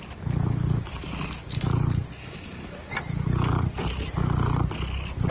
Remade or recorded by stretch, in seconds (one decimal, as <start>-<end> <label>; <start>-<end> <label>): 0.0-2.2 recorded; 2.2-2.9 remade; 2.9-5.3 recorded